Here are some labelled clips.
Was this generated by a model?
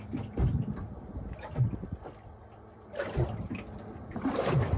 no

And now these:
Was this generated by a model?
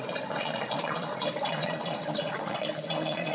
yes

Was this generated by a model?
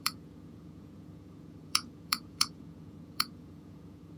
yes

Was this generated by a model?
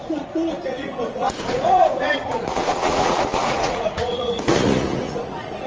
yes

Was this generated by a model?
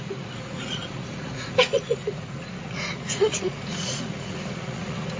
yes